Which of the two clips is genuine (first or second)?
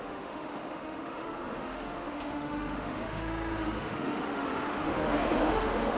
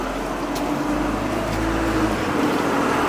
second